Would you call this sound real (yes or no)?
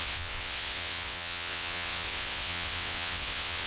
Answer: no